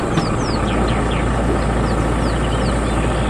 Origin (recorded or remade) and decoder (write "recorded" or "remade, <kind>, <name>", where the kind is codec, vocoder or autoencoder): recorded